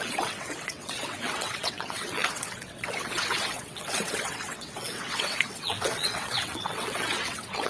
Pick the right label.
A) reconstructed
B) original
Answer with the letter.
A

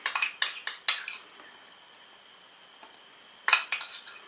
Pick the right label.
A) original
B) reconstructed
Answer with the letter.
A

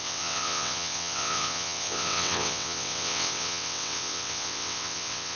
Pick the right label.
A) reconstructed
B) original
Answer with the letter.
A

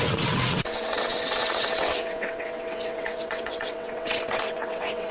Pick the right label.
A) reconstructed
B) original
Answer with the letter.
A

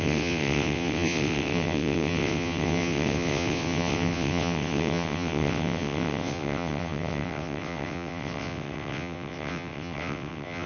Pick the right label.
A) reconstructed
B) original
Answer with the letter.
A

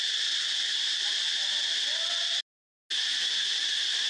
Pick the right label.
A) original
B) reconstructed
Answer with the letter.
A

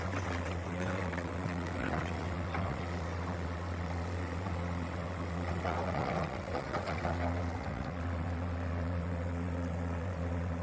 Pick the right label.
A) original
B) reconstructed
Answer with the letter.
B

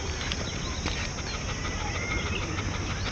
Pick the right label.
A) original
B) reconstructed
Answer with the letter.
A